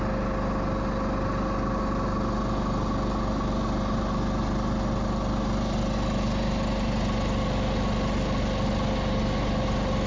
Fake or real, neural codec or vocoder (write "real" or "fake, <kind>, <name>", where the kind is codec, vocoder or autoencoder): real